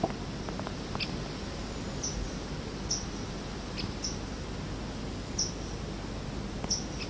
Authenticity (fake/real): real